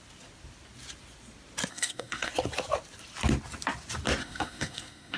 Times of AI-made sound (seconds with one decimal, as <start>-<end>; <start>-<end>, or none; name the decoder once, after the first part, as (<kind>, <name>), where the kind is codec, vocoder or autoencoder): 1.7-2.3 (codec, SNAC); 4.2-5.2